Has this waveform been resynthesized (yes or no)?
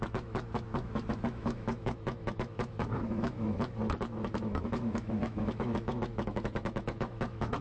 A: yes